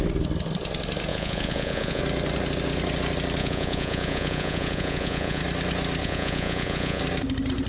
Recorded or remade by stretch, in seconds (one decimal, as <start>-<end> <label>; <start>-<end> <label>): 0.0-1.1 recorded; 1.1-2.0 remade; 2.0-3.4 recorded; 3.4-5.4 remade; 5.4-6.0 recorded; 6.0-7.0 remade; 7.0-7.7 recorded